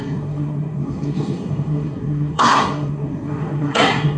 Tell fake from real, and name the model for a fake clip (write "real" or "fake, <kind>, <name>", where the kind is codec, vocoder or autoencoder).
fake, codec, SNAC